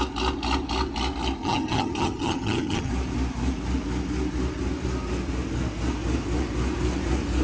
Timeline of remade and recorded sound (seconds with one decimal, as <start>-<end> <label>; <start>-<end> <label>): 0.0-1.4 recorded; 1.4-2.9 remade; 2.9-7.4 recorded